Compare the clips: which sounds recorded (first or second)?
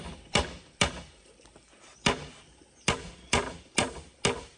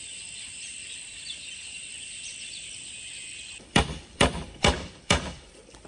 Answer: first